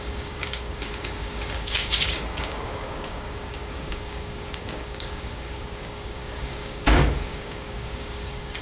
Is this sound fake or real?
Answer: fake